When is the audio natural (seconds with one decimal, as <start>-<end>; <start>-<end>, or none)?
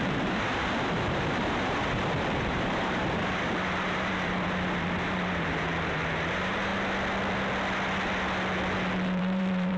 6.7-9.2